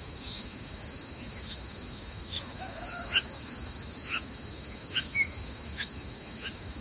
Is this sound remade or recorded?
remade